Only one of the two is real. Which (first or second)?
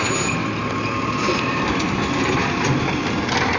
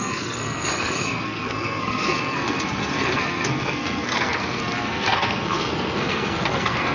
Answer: first